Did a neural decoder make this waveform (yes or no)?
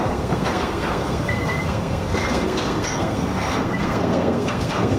yes